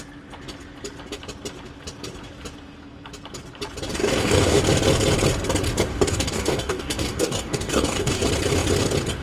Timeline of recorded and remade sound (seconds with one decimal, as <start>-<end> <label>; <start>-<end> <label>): 0.0-4.0 recorded; 4.0-4.6 remade; 4.6-5.9 recorded; 5.9-8.2 remade; 8.2-9.2 recorded